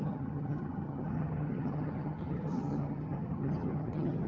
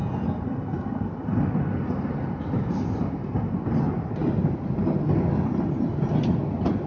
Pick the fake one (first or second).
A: first